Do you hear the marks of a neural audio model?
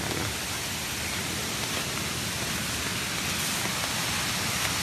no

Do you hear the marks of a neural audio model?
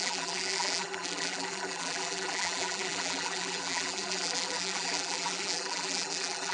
yes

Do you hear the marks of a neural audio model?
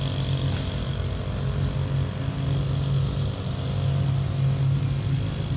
no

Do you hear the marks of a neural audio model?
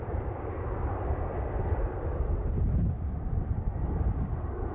yes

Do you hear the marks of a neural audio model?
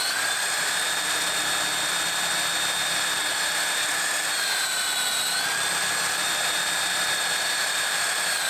no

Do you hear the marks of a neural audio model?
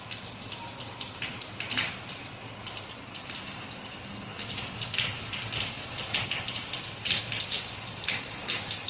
no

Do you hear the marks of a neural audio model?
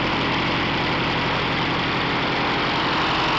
no